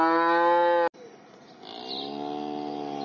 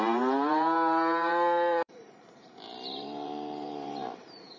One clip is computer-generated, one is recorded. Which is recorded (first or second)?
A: first